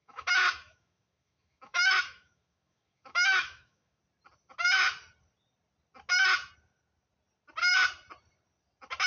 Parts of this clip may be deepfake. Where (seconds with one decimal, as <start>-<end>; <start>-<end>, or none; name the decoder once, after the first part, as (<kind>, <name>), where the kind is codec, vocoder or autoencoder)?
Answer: 0.0-4.0 (autoencoder, DAC-VAE)

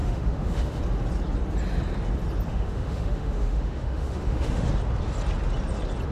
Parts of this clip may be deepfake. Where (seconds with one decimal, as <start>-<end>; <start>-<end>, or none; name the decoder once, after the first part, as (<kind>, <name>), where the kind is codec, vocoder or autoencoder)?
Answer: 0.0-0.8 (autoencoder, DAC-VAE); 2.5-4.7

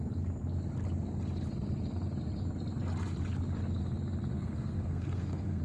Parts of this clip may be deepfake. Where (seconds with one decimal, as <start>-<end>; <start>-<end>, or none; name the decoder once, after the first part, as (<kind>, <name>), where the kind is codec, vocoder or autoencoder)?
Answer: 4.3-5.6 (codec, SNAC)

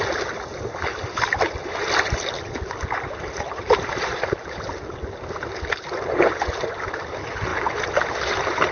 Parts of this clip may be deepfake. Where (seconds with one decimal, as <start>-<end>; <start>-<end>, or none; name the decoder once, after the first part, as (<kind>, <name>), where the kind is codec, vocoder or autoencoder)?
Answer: none